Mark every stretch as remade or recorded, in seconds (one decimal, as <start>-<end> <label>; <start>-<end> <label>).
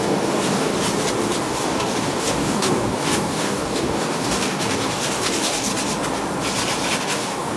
0.0-0.7 remade; 0.7-1.4 recorded; 1.4-5.7 remade; 5.7-7.0 recorded; 7.0-7.6 remade